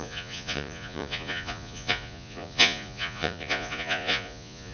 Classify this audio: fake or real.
fake